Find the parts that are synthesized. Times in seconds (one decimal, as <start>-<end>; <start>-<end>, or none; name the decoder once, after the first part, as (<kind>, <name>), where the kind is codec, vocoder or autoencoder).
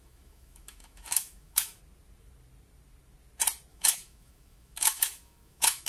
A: 0.0-1.8 (autoencoder, DAC-VAE); 3.7-5.9